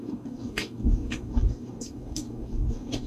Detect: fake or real fake